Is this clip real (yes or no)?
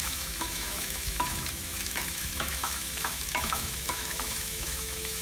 no